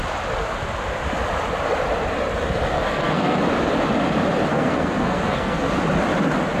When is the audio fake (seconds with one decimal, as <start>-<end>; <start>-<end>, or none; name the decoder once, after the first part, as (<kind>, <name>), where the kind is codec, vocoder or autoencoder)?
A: 2.7-3.4 (codec, SNAC); 4.5-5.8